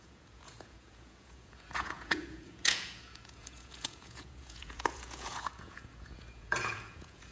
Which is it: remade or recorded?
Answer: remade